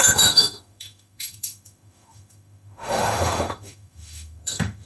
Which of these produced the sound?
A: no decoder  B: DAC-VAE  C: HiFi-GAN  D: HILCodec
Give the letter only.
B